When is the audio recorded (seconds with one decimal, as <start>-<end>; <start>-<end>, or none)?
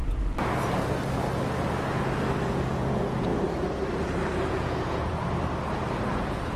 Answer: 0.0-2.5; 3.3-4.5; 5.1-6.1